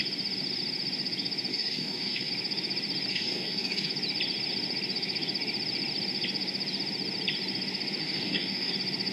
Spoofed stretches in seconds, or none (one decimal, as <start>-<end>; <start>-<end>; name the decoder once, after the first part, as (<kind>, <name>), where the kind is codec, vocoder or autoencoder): 1.5-2.3 (codec, DAC); 3.1-3.9; 8.0-8.7